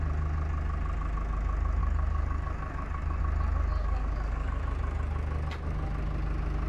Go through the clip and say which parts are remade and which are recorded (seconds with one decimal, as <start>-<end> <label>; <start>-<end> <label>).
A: 0.0-1.8 recorded; 1.8-3.2 remade; 3.2-3.8 recorded; 3.8-4.6 remade; 4.6-6.7 recorded